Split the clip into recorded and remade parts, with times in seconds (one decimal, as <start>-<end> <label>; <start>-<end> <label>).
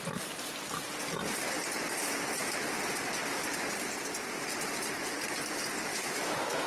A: 0.0-5.9 recorded; 5.9-6.7 remade